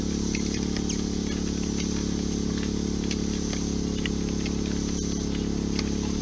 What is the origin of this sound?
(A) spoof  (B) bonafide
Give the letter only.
B